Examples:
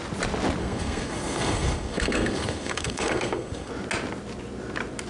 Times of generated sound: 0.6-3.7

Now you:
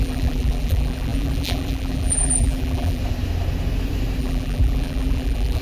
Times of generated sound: 0.0-3.0; 4.2-5.6

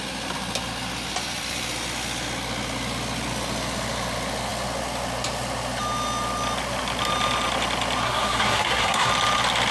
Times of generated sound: 8.0-9.1

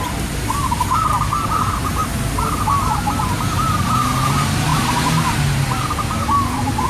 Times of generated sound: none

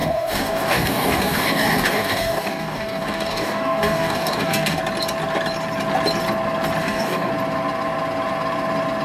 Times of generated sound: 0.0-4.8; 6.8-7.3

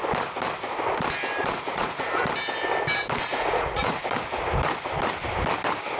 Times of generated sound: 1.4-2.1; 3.3-4.0

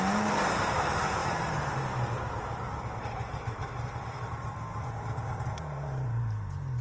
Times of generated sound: 0.0-6.8

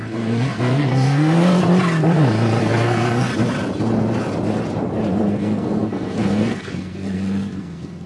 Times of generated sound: 0.0-1.5; 2.6-3.3; 5.2-8.1